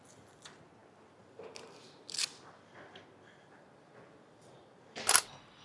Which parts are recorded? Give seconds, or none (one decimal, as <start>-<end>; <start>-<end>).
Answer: 0.0-5.6